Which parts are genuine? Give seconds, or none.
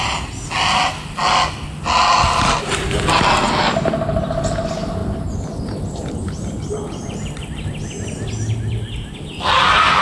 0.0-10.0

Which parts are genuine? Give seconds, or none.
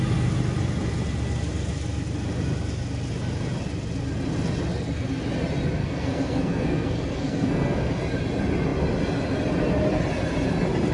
0.0-5.8; 7.9-10.9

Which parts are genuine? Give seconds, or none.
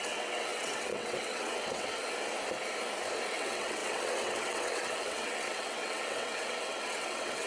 2.0-3.3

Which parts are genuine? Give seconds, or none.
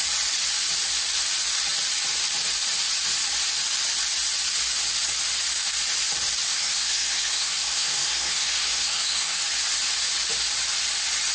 0.0-6.5; 9.4-11.3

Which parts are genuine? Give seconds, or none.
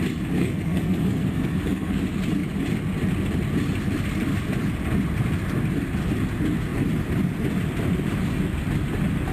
0.0-0.4; 2.0-9.3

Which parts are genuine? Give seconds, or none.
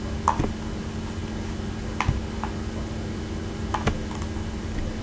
0.0-5.0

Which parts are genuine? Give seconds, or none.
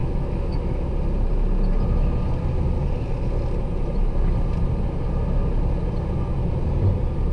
0.9-7.3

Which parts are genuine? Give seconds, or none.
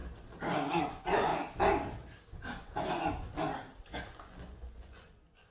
0.0-0.8; 1.3-2.5; 3.3-3.9